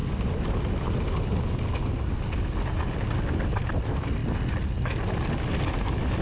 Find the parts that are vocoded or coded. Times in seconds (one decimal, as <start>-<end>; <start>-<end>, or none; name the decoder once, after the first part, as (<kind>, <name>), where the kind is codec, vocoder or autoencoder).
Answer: none